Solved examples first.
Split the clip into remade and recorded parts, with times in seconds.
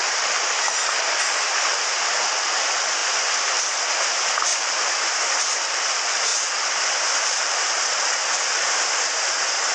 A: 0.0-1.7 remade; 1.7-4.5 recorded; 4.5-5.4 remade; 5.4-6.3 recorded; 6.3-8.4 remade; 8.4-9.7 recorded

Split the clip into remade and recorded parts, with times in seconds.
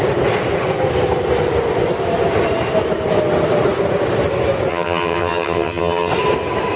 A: 0.0-4.7 recorded; 4.7-6.1 remade; 6.1-6.8 recorded